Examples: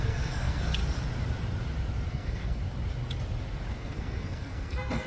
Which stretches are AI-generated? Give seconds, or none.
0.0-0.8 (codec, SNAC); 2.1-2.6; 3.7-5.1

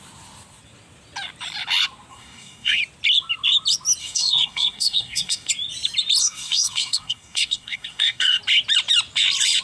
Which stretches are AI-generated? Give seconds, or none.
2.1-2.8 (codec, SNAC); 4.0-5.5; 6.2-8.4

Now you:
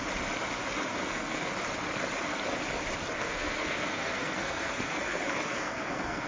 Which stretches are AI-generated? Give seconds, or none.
0.9-1.5 (codec, SNAC); 3.2-6.3

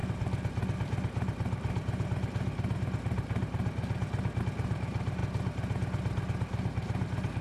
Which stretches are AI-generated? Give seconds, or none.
none

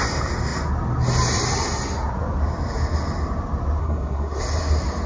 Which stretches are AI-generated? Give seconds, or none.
3.8-4.4 (codec, SNAC)

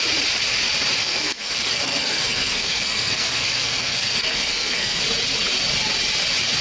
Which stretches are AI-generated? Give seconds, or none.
1.0-5.0 (codec, SNAC)

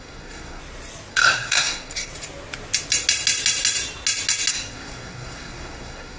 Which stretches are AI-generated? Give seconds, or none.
0.0-0.6 (codec, SNAC); 1.1-2.1; 4.5-6.2